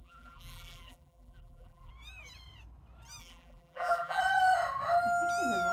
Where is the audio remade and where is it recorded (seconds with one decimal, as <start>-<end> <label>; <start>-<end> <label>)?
0.0-1.9 remade; 1.9-3.2 recorded; 3.2-4.2 remade; 4.2-5.7 recorded